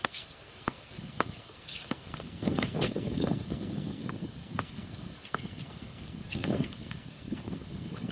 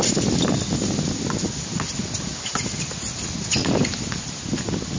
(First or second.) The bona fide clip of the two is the second